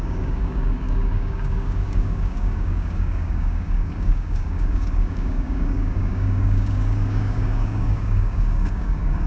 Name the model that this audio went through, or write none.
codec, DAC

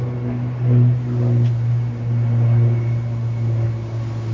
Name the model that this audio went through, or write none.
none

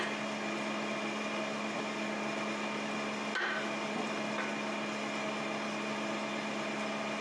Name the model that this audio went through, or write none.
none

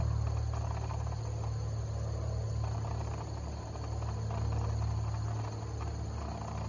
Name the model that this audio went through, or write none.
none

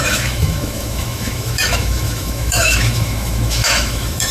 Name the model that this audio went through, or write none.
autoencoder, DAC-VAE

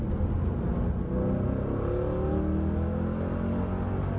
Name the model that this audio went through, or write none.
none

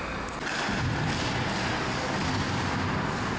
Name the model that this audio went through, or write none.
none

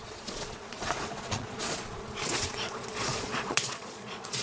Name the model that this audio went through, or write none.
vocoder, Vocos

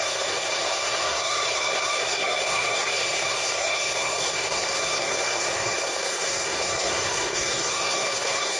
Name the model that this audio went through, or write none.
codec, SNAC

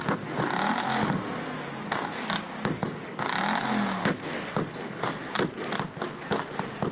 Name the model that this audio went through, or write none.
none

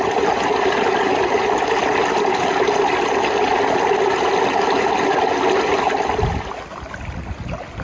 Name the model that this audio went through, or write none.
none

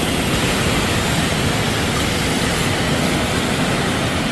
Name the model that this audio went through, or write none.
none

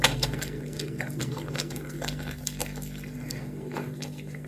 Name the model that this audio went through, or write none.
codec, SNAC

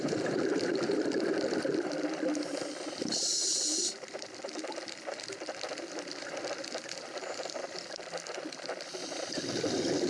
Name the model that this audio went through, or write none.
vocoder, BigVGAN v2